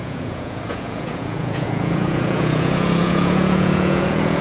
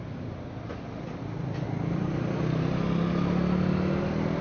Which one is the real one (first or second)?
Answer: second